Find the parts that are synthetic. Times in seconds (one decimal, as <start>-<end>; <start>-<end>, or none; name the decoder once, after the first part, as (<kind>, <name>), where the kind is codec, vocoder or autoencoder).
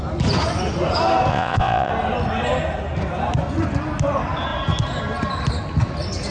1.3-1.9 (vocoder, Vocos)